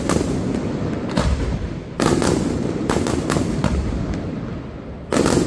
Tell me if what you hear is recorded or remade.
recorded